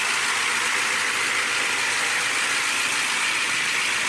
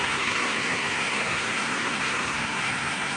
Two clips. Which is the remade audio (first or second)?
second